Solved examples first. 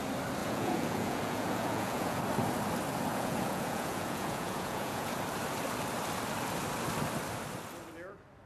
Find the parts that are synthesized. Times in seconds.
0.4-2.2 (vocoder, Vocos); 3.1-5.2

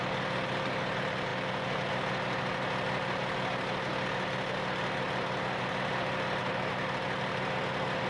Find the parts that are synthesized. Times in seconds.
none

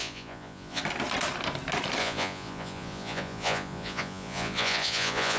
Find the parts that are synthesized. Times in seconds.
0.0-0.8 (vocoder, Vocos); 2.0-5.4

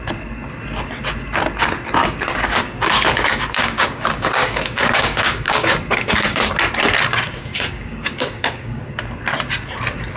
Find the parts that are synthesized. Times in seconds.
2.0-6.5 (codec, DAC); 7.4-9.0

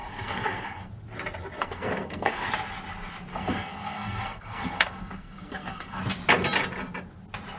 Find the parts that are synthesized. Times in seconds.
0.0-0.9 (codec, SNAC); 1.6-2.5; 3.3-6.0

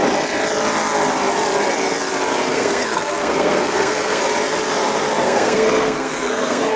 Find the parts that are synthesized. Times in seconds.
2.5-4.2 (codec, SNAC); 5.2-6.8

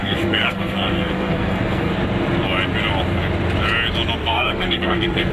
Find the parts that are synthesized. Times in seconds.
0.0-1.9 (codec, SNAC); 4.2-5.3

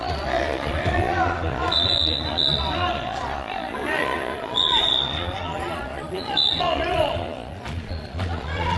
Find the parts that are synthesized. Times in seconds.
0.0-8.8 (vocoder, Vocos)